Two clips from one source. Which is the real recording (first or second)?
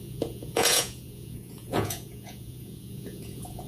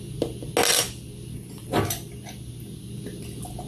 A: second